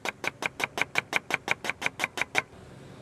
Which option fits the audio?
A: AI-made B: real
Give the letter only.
B